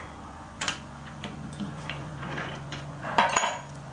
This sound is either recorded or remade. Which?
remade